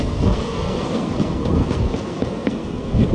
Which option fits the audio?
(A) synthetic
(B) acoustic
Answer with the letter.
A